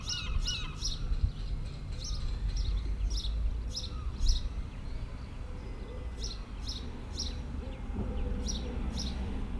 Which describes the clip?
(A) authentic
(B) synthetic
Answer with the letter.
A